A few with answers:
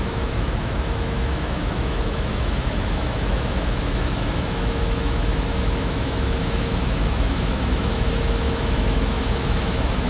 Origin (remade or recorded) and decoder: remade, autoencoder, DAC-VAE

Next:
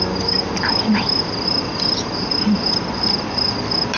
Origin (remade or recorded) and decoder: recorded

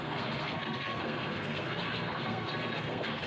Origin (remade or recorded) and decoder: remade, codec, SNAC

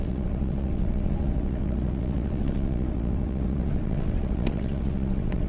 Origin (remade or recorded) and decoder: remade, vocoder, WaveNeXt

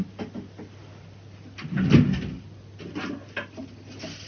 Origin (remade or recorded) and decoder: recorded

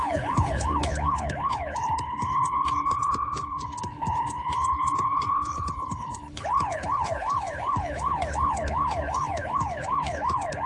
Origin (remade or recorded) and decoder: remade, codec, HILCodec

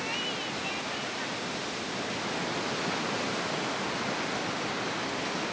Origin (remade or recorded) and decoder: recorded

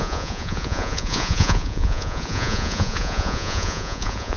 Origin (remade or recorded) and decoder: remade, vocoder, Vocos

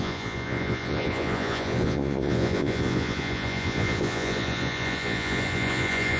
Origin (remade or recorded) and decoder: remade, vocoder, Vocos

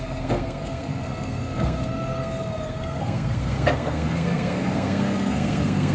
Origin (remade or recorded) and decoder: remade, codec, SNAC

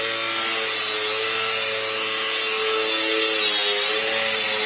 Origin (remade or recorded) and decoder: recorded